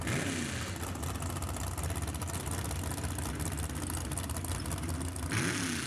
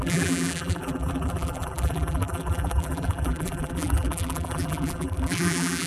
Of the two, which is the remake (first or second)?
second